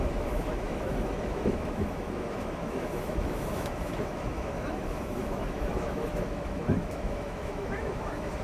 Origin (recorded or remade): remade